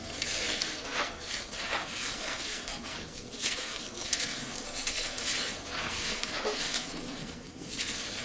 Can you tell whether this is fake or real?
fake